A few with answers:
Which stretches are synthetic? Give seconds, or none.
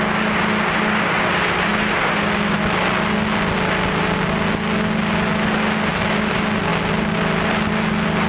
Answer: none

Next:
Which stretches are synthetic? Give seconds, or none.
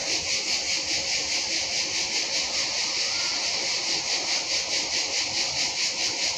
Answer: none